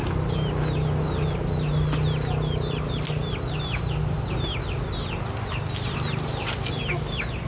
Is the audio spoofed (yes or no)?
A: no